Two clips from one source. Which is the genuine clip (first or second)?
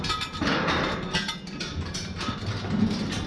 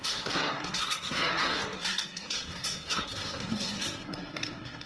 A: first